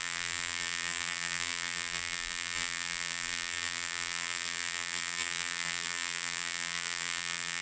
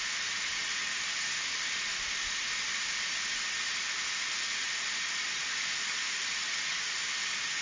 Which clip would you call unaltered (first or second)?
second